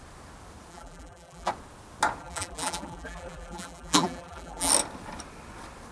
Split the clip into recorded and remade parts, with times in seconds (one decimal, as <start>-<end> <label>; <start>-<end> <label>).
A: 0.0-0.7 recorded; 0.7-1.5 remade; 1.5-2.2 recorded; 2.2-4.7 remade; 4.7-5.9 recorded